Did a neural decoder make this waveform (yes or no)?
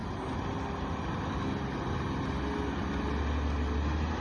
no